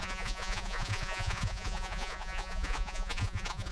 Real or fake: fake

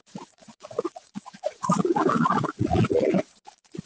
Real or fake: fake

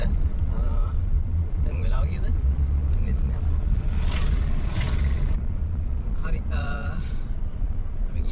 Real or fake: fake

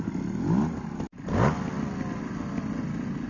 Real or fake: real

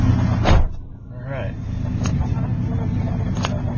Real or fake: real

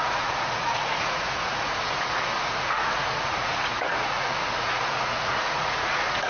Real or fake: fake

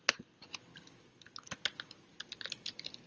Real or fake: real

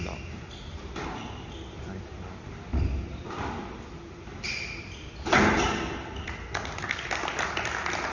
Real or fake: real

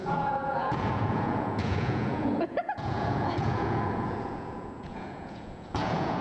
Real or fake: fake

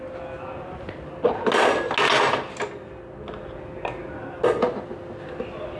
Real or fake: real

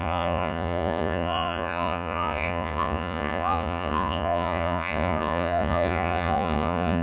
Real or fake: fake